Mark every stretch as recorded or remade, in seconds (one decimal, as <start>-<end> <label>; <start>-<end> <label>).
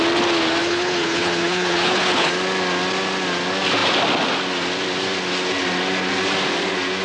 0.0-0.6 recorded; 0.6-2.3 remade; 2.3-7.0 recorded